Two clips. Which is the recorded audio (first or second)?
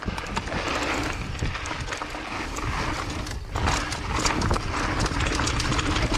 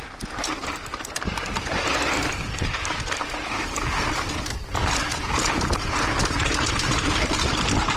first